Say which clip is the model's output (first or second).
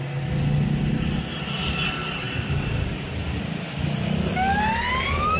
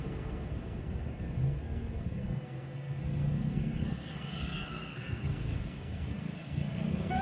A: second